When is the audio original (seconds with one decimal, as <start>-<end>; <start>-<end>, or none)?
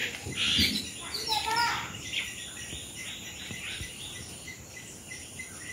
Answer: 0.0-3.4